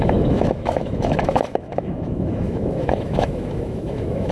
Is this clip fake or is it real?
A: fake